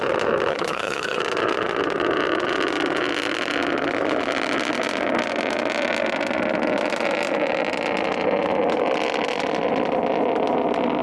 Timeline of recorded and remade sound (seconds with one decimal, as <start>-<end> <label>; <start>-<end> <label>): 0.0-0.5 recorded; 0.5-1.2 remade; 1.2-11.0 recorded